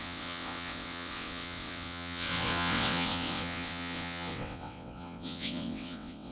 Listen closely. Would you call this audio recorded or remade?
remade